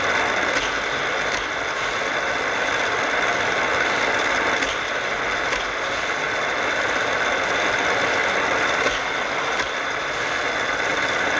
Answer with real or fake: real